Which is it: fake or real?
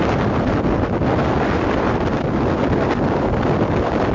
real